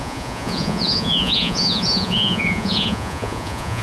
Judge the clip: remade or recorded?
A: remade